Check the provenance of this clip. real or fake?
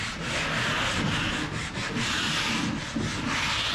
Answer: real